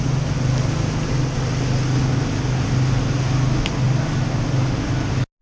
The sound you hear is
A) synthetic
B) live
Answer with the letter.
B